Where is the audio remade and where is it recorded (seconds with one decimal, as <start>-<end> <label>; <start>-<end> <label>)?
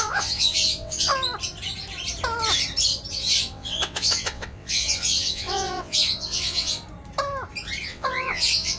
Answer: 0.0-1.1 remade; 1.1-3.1 recorded; 3.1-6.8 remade; 6.8-7.8 recorded; 7.8-8.8 remade